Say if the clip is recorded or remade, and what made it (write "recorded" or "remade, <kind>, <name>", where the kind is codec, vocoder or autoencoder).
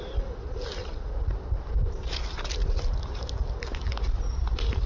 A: recorded